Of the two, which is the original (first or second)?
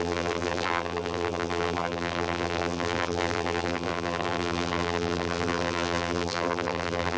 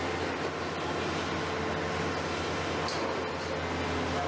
second